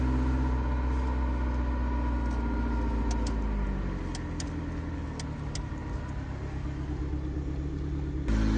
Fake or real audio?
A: real